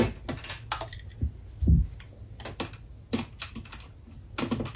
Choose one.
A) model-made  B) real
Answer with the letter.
B